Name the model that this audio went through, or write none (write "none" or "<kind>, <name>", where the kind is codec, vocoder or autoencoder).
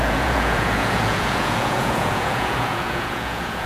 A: vocoder, Vocos